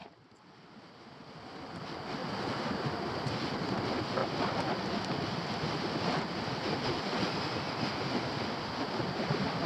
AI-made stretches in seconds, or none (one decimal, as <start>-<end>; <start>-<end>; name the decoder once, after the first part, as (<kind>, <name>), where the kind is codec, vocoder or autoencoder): 0.0-1.6 (vocoder, BigVGAN v2); 2.2-3.1